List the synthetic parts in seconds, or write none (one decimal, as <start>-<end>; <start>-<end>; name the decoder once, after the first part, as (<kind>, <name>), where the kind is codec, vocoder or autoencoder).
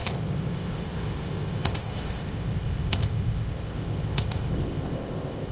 0.0-5.5 (codec, ZipCodec)